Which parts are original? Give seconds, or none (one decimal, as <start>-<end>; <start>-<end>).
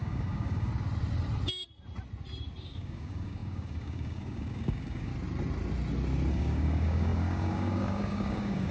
0.7-2.6; 5.1-6.3